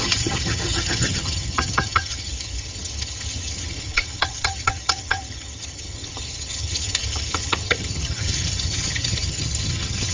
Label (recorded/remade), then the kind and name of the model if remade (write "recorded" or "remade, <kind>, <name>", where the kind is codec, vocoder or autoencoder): remade, vocoder, HiFi-GAN